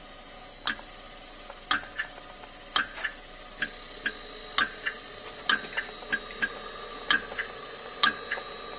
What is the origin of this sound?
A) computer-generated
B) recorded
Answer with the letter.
B